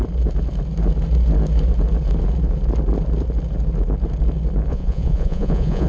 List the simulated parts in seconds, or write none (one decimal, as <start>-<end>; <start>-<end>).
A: 4.7-5.9